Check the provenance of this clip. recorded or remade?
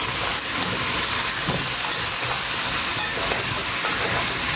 recorded